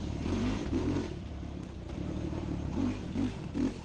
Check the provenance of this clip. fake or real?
fake